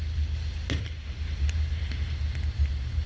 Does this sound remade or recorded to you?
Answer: recorded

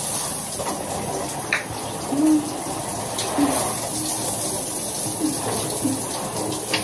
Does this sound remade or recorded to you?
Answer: recorded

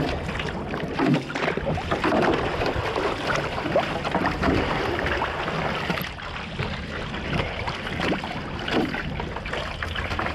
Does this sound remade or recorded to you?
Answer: recorded